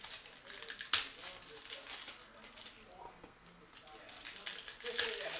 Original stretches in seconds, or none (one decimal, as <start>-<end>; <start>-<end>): 0.0-3.0; 3.6-5.4